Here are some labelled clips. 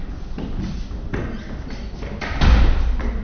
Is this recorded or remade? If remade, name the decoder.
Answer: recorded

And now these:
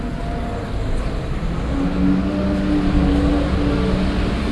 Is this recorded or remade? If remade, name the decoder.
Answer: recorded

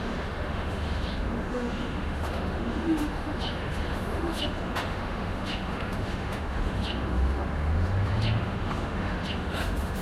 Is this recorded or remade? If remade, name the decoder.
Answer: remade, autoencoder, DAC-VAE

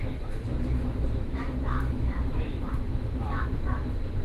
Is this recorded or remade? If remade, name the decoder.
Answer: remade, autoencoder, DAC-VAE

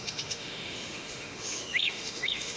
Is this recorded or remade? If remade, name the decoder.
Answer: remade, autoencoder, DAC-VAE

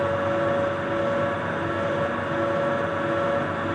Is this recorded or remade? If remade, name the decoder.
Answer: recorded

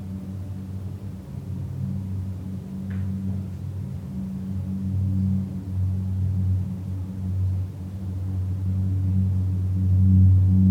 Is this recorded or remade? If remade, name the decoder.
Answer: recorded